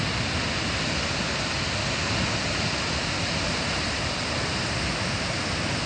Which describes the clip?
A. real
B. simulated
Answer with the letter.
A